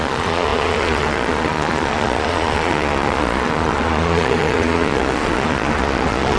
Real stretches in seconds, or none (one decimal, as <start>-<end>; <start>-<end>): none